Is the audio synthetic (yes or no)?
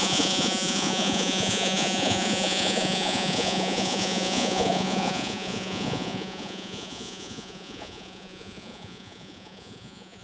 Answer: yes